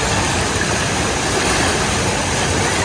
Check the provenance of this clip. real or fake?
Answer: real